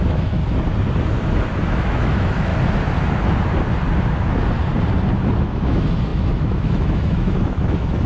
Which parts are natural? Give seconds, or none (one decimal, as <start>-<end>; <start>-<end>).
0.4-1.6; 2.5-5.4